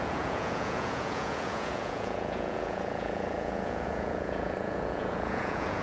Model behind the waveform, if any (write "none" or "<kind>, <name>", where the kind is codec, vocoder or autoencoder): vocoder, Vocos